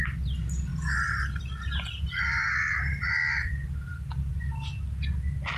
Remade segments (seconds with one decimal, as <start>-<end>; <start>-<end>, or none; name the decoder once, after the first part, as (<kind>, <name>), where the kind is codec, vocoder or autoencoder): none